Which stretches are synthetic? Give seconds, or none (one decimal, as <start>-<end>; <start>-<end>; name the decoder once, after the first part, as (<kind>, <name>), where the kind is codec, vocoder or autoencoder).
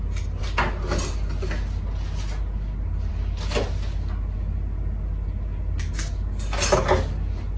none